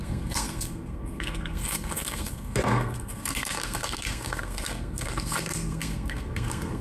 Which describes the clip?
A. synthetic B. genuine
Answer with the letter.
A